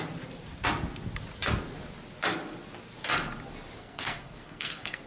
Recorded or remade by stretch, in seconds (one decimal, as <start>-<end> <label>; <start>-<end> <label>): 0.0-3.8 recorded; 3.8-5.1 remade